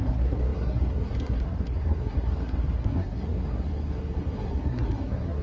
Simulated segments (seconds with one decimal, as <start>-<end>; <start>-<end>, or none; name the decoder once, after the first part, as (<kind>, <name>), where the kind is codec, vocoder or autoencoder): 0.0-5.4 (codec, SNAC)